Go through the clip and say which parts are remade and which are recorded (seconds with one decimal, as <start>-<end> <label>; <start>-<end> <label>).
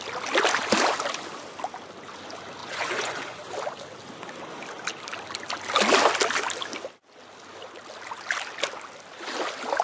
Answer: 0.0-2.6 recorded; 2.6-3.4 remade; 3.4-9.8 recorded